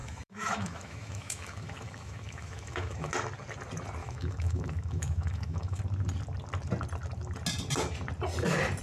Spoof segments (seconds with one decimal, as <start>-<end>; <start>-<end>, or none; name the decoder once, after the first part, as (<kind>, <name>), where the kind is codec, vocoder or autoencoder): 0.0-3.1 (autoencoder, DAC-VAE); 4.0-5.8